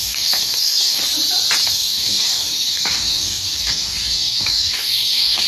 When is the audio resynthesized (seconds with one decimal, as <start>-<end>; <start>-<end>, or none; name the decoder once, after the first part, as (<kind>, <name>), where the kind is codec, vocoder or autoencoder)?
0.0-1.0 (codec, DAC); 1.7-5.5

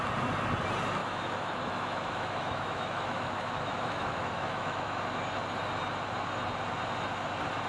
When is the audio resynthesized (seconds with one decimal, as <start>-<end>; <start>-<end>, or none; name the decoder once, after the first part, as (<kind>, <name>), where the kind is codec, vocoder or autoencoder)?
1.0-5.0 (autoencoder, DAC-VAE)

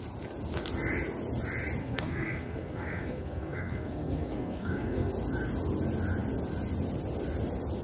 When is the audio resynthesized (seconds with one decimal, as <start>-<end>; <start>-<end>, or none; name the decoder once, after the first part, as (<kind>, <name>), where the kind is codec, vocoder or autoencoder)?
1.8-5.1 (codec, SNAC)